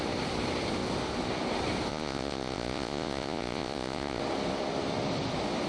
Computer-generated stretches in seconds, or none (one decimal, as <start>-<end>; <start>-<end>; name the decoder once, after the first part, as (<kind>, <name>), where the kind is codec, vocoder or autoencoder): 1.9-4.2 (vocoder, Vocos)